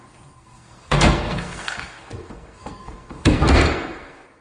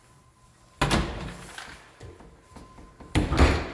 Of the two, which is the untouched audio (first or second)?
second